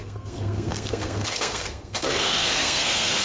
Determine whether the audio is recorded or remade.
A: remade